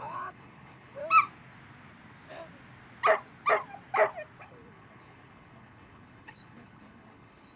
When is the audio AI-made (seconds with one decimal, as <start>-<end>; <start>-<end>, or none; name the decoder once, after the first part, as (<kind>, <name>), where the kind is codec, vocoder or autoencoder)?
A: 0.0-1.0 (codec, HILCodec); 4.4-7.6

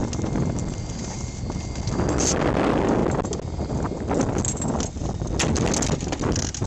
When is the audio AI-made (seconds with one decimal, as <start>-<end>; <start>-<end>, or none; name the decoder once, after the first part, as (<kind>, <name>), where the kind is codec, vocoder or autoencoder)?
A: none

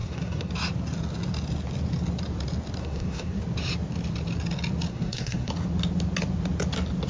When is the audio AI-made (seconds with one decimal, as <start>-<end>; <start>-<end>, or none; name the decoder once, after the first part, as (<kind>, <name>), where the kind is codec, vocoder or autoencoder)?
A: 0.0-0.5 (codec, SNAC); 2.8-3.4; 4.9-5.5

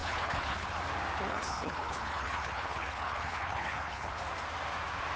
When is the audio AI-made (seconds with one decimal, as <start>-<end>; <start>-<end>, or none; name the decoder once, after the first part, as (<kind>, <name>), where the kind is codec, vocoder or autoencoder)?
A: 0.0-0.8 (codec, HILCodec); 1.3-4.1

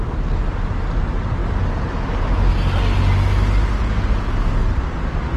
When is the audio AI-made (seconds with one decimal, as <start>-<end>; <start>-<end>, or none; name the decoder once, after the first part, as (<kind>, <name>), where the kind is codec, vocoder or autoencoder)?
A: none

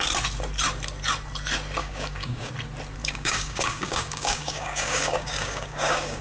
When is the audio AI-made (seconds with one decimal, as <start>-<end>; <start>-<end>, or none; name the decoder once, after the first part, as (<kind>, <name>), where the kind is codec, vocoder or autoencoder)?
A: 1.8-2.5 (codec, DAC); 3.0-6.2

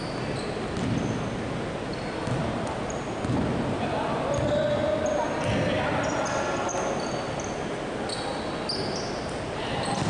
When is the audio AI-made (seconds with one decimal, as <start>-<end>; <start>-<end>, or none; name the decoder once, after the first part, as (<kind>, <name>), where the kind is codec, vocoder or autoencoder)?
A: none

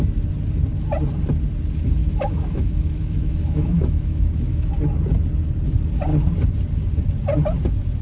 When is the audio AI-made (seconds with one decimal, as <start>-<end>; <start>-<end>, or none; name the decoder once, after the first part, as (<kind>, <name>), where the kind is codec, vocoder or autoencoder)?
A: 2.0-4.7 (autoencoder, DAC-VAE)